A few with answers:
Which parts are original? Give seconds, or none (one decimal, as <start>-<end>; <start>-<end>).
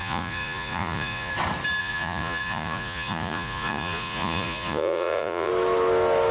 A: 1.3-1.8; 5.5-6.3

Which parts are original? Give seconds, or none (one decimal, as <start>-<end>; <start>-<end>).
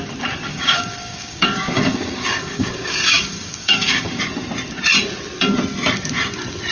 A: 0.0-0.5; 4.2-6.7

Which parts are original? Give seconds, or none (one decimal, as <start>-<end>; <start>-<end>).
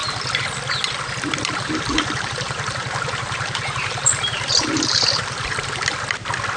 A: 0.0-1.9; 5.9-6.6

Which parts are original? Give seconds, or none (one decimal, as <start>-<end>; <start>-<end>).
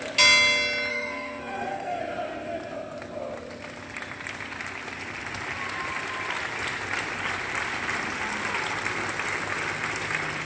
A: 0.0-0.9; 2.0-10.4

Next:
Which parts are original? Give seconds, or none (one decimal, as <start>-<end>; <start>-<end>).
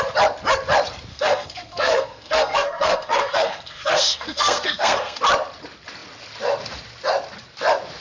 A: 0.0-1.1; 5.2-8.0